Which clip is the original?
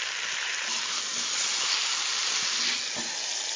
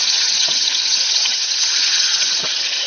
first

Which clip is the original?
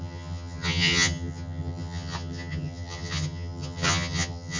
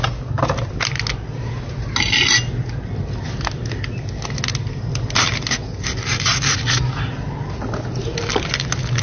second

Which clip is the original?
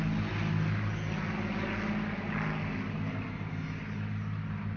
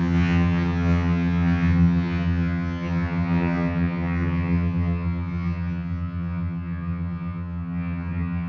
first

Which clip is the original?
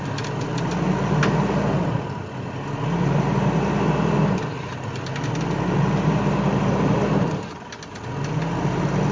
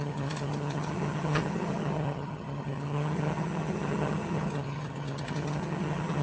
first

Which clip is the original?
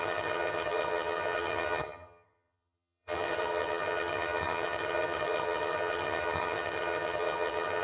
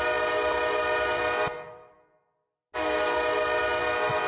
second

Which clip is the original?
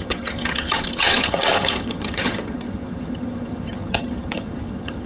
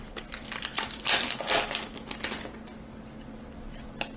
second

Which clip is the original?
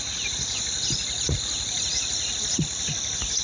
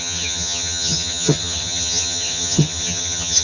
first